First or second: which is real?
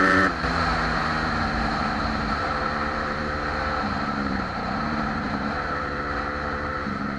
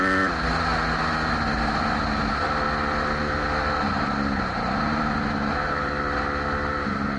second